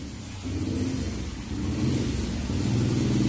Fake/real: real